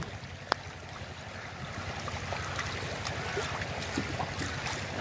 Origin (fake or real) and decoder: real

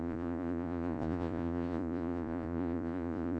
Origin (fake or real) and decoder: fake, vocoder, Vocos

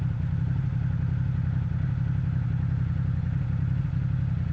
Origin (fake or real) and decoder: real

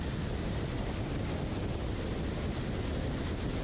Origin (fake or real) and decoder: real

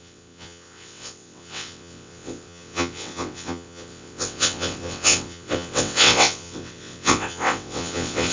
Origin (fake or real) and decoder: fake, vocoder, WaveNeXt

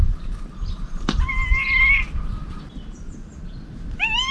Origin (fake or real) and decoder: fake, vocoder, BigVGAN v2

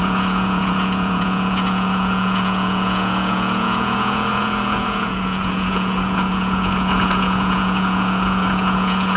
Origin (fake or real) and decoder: fake, vocoder, Vocos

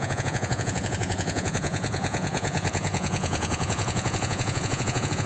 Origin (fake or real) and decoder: fake, vocoder, Vocos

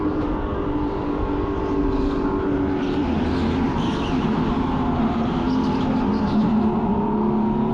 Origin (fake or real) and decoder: real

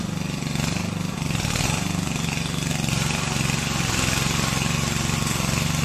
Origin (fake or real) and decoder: real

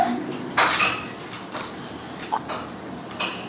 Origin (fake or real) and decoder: real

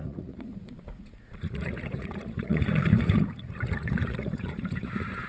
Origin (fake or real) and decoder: fake, vocoder, Vocos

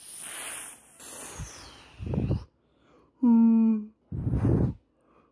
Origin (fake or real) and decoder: real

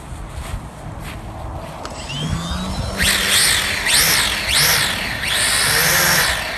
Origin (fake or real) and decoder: real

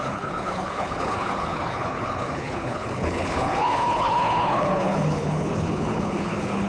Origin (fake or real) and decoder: fake, codec, HILCodec